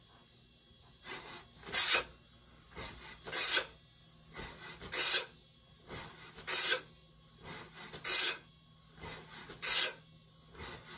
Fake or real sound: real